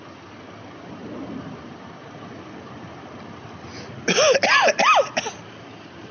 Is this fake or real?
real